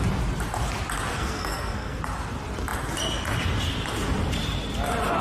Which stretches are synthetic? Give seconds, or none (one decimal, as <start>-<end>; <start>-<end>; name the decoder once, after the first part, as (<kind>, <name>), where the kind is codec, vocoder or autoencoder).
1.1-2.0 (codec, SNAC)